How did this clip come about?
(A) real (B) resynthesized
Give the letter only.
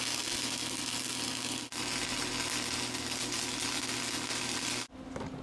A